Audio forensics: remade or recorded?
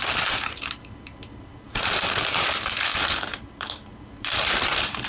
remade